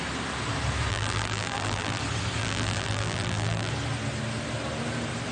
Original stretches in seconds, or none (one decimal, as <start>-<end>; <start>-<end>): 0.0-0.9; 2.0-2.4; 3.7-5.3